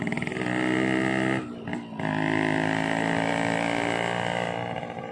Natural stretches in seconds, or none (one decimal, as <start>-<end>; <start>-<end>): 0.0-5.1